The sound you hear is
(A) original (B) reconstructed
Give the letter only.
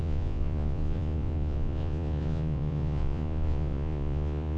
B